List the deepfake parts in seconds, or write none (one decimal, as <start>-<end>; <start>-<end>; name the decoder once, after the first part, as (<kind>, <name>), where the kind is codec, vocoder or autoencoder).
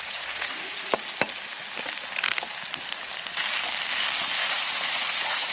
0.0-0.9 (vocoder, Vocos); 4.2-5.5